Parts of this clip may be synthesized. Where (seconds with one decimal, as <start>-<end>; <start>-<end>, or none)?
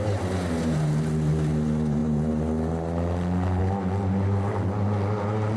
none